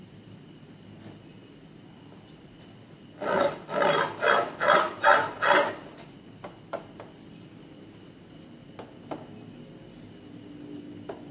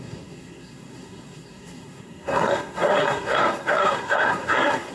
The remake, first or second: second